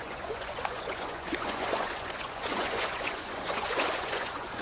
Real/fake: fake